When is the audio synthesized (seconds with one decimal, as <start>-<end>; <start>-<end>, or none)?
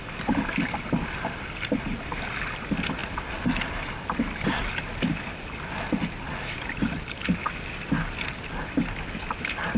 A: none